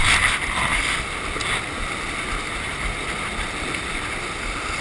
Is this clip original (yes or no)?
yes